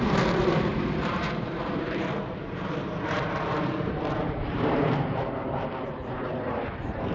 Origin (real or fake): fake